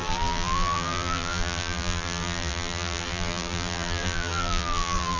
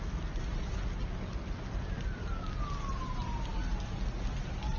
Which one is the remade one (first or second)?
first